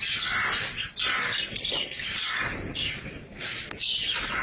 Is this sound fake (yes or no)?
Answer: no